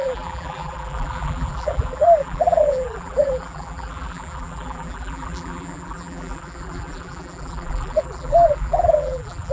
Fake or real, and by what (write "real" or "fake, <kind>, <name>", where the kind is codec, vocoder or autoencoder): fake, vocoder, BigVGAN v2